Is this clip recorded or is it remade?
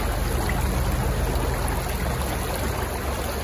recorded